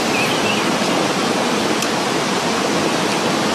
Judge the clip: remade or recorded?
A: recorded